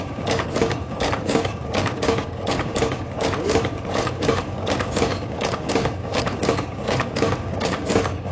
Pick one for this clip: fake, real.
fake